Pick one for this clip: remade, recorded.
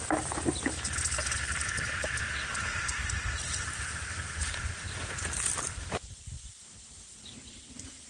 remade